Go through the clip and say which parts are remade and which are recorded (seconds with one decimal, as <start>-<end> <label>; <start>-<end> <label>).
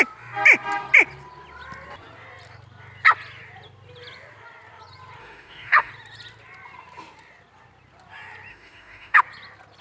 0.0-5.2 recorded; 5.2-5.9 remade; 5.9-8.5 recorded; 8.5-9.2 remade; 9.2-9.8 recorded